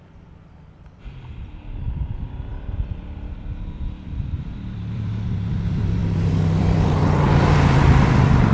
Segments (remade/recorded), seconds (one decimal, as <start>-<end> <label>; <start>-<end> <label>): 0.0-8.5 remade